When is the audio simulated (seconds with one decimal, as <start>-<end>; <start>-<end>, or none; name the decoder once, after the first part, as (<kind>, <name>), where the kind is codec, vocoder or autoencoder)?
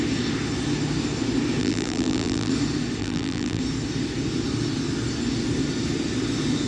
1.6-2.5 (vocoder, BigVGAN v2); 3.0-3.6